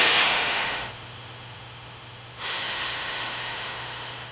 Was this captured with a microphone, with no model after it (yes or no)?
no